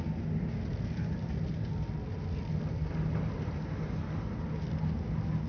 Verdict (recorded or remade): recorded